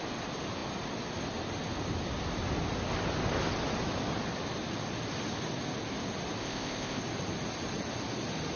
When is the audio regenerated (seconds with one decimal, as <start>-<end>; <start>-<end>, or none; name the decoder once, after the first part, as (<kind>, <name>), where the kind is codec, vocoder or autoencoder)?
6.4-7.0 (codec, ZipCodec)